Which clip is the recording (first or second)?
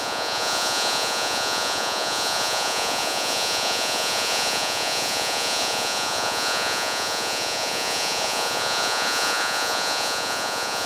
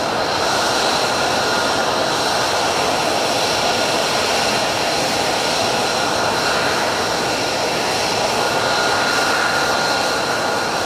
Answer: second